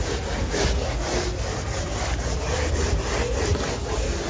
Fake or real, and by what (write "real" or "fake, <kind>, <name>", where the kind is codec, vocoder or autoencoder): real